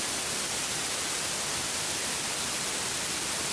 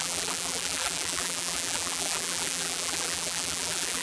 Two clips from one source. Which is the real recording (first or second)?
first